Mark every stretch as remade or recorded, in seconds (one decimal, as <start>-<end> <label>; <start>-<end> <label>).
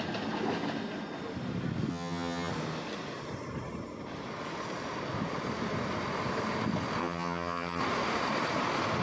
0.0-1.9 recorded; 1.9-2.5 remade; 2.5-7.0 recorded; 7.0-7.8 remade; 7.8-9.0 recorded